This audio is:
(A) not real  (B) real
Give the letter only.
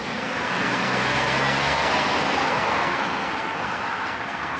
A